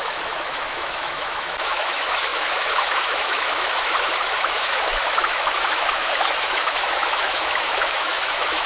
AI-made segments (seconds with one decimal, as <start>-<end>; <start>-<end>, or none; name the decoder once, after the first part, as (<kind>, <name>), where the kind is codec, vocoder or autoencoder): 0.0-8.7 (autoencoder, DAC-VAE)